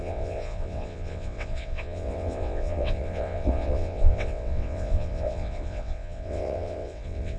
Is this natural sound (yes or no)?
no